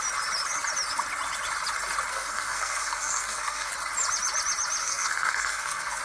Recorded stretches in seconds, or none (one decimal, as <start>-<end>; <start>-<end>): 0.0-2.1; 3.7-4.8